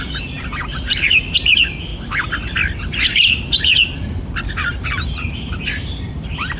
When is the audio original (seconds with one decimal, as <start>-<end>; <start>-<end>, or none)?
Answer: 1.9-2.8